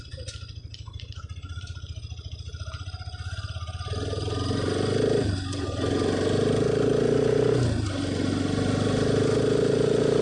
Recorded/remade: recorded